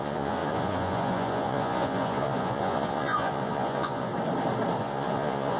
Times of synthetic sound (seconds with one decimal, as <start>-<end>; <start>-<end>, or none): 0.0-4.1; 4.8-5.6